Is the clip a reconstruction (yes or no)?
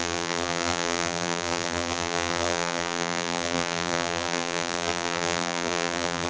yes